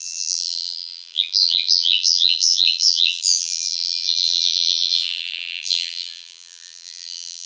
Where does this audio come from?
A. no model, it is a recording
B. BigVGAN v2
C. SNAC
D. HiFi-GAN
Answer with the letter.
B